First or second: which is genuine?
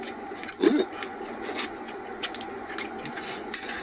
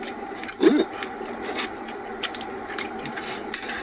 second